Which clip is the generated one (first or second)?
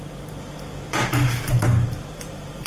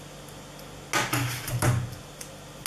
first